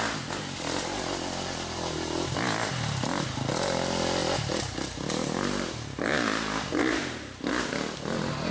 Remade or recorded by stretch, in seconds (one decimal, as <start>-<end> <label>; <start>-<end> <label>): 0.0-8.5 recorded